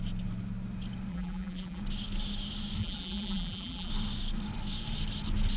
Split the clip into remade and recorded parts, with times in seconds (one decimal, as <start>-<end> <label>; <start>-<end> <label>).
0.0-1.1 recorded; 1.1-1.8 remade; 1.8-2.8 recorded; 2.8-3.9 remade; 3.9-5.6 recorded